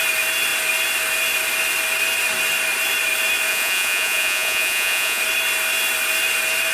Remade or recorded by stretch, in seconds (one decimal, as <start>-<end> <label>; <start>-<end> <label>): 0.0-3.5 recorded; 3.5-5.2 remade; 5.2-6.7 recorded